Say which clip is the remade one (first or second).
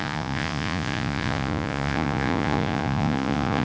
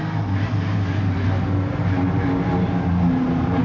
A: first